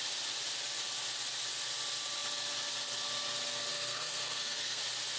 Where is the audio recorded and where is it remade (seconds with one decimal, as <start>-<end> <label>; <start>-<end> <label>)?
0.0-3.7 recorded; 3.7-4.8 remade; 4.8-5.2 recorded